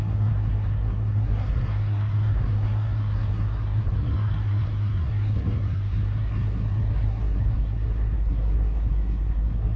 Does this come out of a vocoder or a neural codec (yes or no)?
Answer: yes